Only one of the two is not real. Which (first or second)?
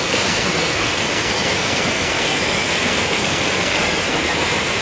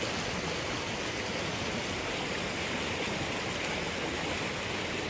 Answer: first